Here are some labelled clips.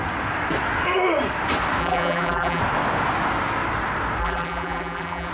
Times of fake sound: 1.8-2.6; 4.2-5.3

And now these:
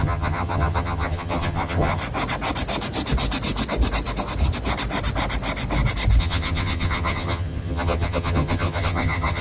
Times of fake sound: 0.0-2.0; 6.2-9.4

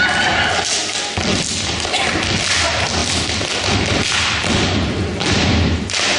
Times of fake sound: none

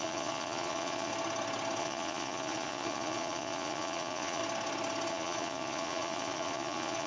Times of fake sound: 0.0-1.1; 1.8-4.4; 5.1-7.1

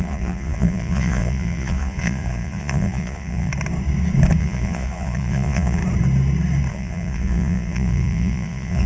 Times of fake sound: 0.0-3.5; 4.4-5.8; 6.7-8.9

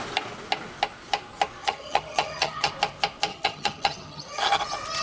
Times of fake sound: 1.6-2.7; 3.3-4.6

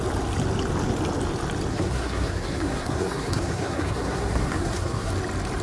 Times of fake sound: 1.7-5.1